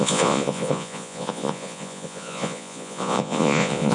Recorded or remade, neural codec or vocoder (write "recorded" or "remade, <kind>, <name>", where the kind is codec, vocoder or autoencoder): remade, vocoder, Vocos